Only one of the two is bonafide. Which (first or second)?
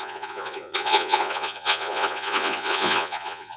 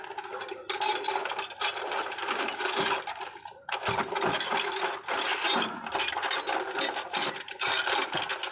second